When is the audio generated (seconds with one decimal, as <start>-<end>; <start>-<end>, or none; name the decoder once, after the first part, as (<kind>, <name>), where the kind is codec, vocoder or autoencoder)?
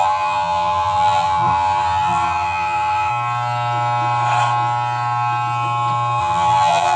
0.0-3.1 (vocoder, BigVGAN v2); 6.2-7.0